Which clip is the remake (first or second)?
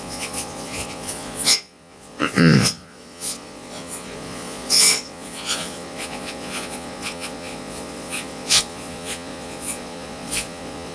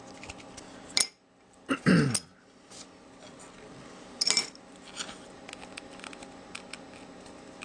first